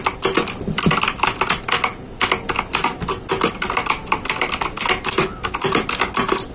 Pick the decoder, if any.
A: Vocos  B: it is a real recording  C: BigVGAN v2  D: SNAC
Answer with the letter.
B